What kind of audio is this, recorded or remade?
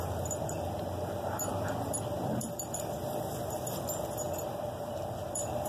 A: remade